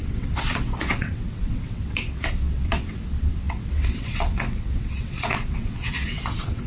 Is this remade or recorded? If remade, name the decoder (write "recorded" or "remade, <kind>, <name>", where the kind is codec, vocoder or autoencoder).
remade, vocoder, WaveNeXt